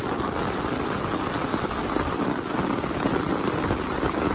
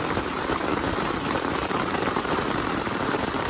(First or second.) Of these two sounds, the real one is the first